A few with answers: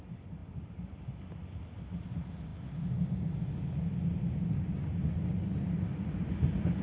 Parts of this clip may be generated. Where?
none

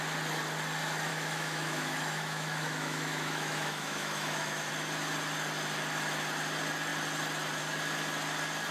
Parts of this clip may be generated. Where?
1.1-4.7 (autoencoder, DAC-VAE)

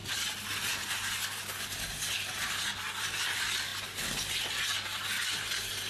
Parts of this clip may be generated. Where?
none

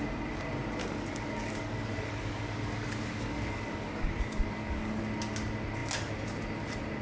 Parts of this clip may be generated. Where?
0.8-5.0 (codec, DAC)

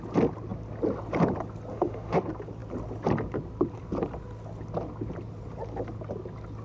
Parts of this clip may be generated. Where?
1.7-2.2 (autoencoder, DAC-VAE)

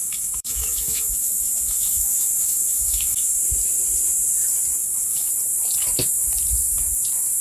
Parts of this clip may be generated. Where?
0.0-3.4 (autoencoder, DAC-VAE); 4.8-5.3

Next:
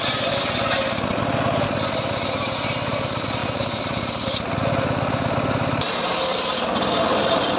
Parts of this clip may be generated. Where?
3.4-4.6 (vocoder, BigVGAN v2); 6.3-7.6

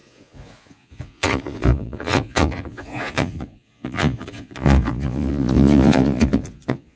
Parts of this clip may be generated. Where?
0.0-7.0 (vocoder, Vocos)